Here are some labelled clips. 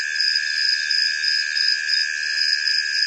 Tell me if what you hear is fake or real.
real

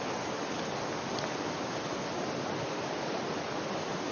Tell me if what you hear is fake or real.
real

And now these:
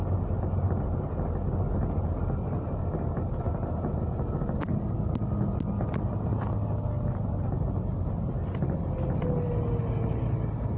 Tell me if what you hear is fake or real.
real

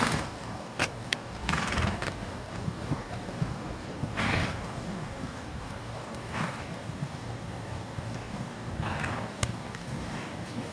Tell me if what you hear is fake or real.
fake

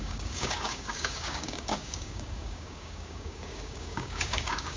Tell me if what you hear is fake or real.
fake